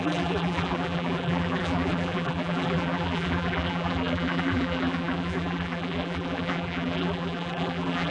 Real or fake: fake